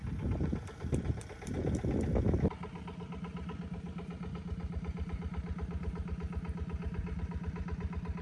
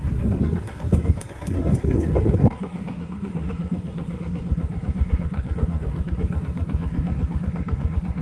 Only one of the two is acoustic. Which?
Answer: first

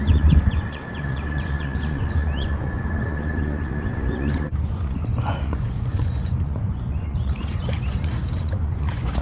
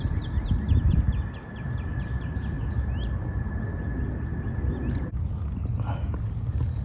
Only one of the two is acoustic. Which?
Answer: second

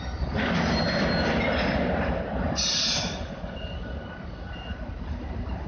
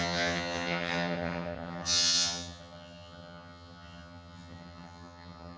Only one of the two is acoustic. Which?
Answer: first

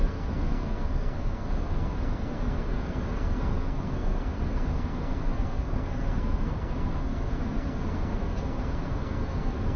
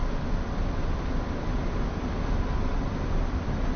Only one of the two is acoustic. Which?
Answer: second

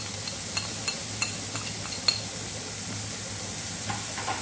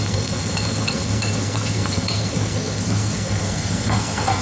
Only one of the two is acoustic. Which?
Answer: first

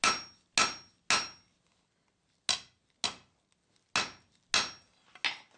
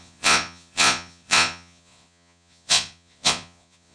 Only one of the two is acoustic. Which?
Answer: first